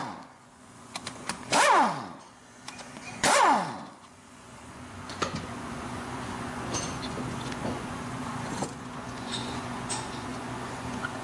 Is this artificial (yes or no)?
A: yes